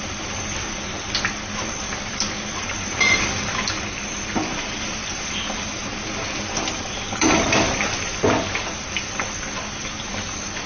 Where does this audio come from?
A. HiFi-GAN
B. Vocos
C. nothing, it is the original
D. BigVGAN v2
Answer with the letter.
D